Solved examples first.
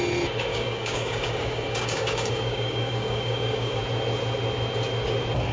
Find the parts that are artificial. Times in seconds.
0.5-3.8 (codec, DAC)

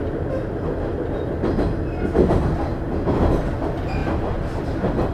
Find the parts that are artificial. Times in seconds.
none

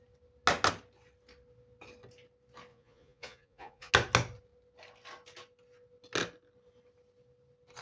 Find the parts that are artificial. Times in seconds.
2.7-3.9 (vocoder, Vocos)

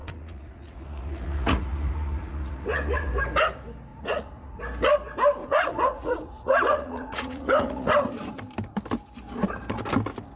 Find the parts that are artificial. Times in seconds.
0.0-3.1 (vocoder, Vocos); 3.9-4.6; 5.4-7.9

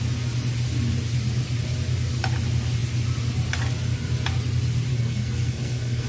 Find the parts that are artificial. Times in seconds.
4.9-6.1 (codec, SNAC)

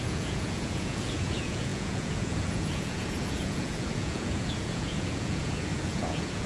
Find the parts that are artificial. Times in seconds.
0.0-6.5 (vocoder, Vocos)

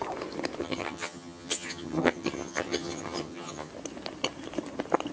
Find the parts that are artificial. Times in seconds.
0.6-3.7 (vocoder, HiFi-GAN)

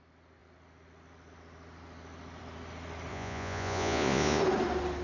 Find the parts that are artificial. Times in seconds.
3.1-4.4 (vocoder, Vocos)